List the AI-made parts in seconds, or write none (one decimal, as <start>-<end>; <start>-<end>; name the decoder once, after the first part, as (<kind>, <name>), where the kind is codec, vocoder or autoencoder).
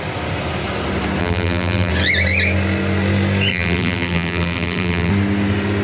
1.2-1.9 (vocoder, BigVGAN v2); 3.5-5.1